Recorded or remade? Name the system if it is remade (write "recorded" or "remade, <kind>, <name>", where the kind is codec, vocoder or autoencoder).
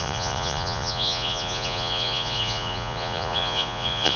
remade, vocoder, Vocos